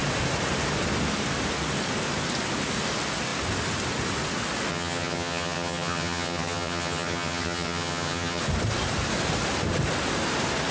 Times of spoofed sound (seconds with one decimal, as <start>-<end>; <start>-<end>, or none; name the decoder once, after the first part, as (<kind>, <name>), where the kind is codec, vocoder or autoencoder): 4.7-8.4 (vocoder, HiFi-GAN)